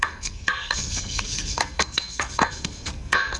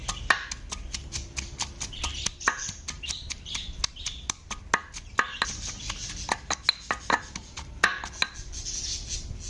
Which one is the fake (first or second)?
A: first